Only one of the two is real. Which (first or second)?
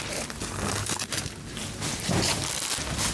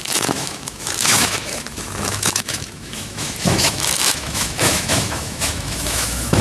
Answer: first